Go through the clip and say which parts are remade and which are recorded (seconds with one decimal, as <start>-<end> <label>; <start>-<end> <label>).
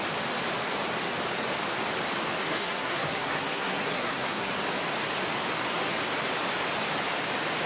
0.0-2.4 recorded; 2.4-4.5 remade; 4.5-7.7 recorded